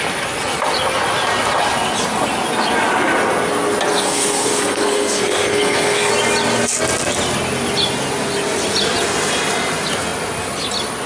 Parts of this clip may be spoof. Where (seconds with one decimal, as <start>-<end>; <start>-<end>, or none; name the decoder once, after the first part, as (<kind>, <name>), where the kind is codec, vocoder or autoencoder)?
3.9-6.1 (codec, SNAC)